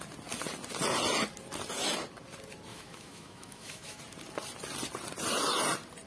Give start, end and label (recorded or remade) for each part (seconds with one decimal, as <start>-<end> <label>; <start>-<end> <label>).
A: 0.0-2.7 recorded; 2.7-4.0 remade; 4.0-6.1 recorded